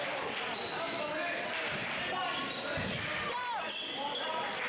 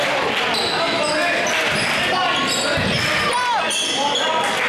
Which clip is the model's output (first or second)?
first